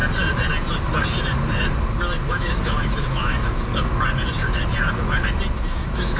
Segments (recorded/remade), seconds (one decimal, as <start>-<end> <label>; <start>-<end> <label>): 0.0-2.3 recorded; 2.3-3.7 remade; 3.7-5.6 recorded; 5.6-6.2 remade